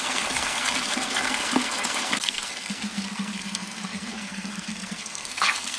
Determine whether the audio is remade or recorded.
remade